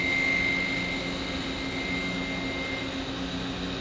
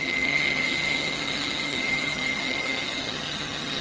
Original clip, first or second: first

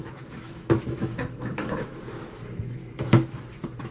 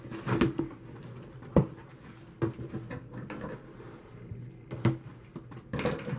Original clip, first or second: second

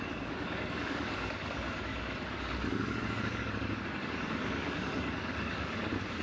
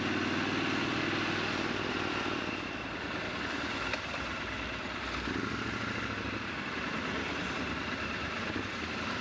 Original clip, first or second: second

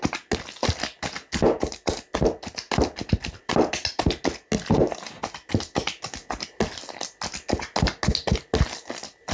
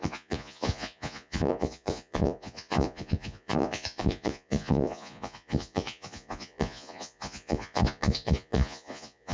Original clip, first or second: first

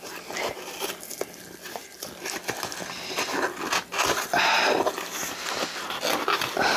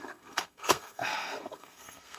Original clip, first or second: first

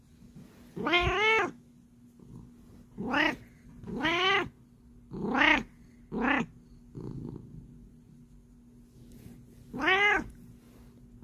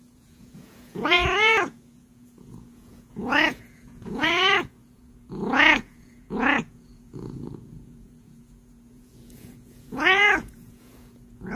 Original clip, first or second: first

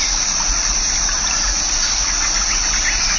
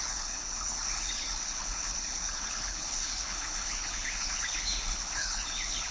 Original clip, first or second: first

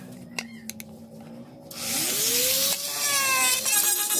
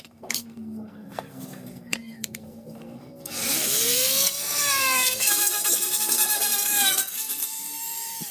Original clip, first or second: first